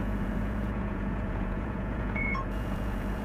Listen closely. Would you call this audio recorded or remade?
remade